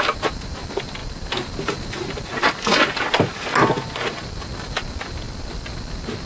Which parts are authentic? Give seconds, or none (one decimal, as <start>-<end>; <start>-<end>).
0.0-6.3